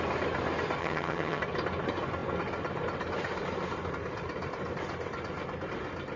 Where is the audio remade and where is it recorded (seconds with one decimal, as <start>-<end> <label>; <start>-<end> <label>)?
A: 0.0-0.8 recorded; 0.8-1.4 remade; 1.4-6.2 recorded